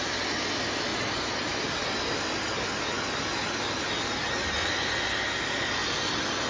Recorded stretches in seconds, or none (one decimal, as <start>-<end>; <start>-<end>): 0.0-6.5